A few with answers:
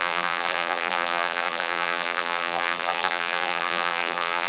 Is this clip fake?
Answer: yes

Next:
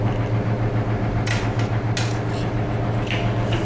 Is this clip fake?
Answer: no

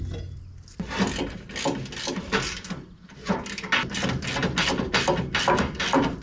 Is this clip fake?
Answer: no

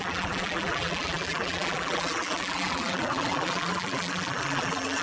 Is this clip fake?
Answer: yes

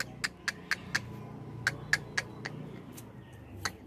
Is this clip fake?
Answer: no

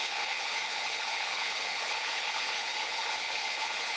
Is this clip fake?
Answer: yes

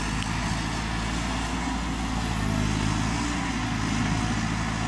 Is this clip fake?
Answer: no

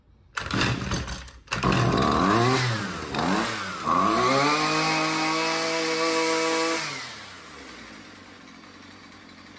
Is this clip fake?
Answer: no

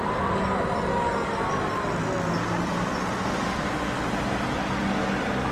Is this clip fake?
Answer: no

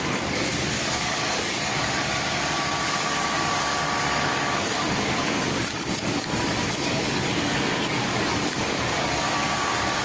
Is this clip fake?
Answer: yes